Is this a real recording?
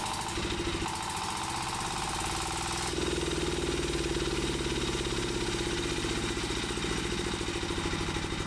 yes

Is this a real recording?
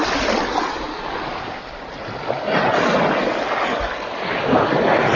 yes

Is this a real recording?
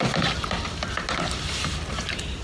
yes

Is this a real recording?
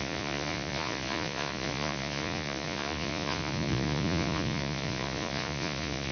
no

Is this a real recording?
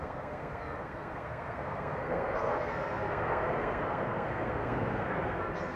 no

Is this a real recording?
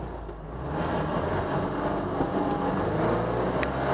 yes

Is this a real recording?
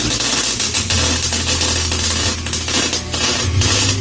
yes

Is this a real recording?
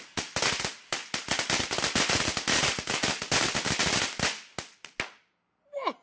yes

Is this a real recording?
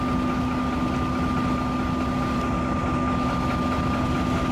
yes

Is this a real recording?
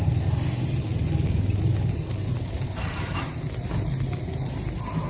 yes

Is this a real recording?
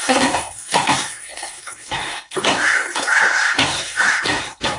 no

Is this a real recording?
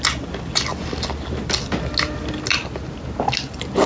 yes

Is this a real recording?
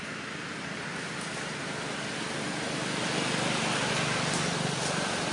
yes